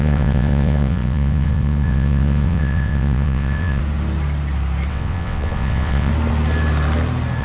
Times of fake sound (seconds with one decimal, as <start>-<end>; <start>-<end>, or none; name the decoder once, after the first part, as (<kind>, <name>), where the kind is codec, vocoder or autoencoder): 0.0-3.8 (vocoder, WaveNeXt); 4.9-6.1